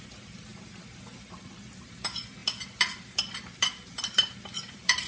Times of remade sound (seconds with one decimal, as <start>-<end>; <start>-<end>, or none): none